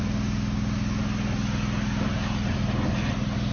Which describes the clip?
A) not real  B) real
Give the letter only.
B